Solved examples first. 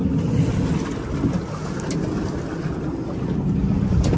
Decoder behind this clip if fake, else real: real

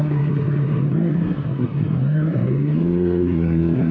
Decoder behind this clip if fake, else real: fake, codec, SNAC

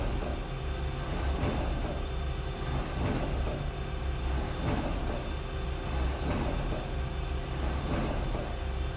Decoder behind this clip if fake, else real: real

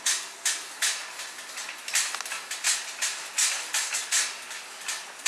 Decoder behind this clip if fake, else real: real